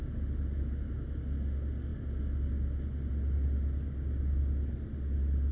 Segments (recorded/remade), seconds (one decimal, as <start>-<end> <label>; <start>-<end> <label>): 0.0-5.5 recorded